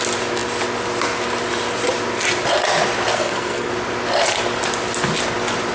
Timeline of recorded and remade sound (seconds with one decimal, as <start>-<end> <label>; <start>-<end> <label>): 0.0-3.1 recorded; 3.1-3.7 remade; 3.7-5.7 recorded